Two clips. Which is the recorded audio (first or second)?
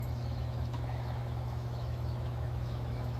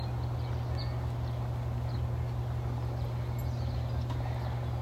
second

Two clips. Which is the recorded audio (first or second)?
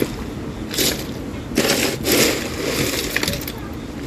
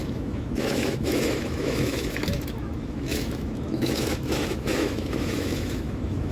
first